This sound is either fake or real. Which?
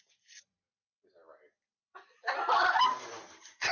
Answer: fake